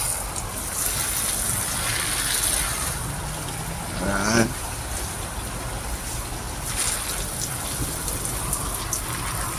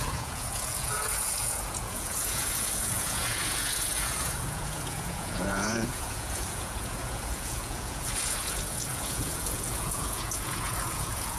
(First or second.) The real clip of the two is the first